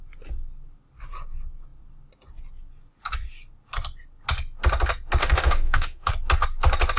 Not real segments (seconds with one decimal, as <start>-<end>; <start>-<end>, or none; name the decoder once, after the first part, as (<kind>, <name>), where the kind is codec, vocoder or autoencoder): 5.2-6.1 (autoencoder, DAC-VAE)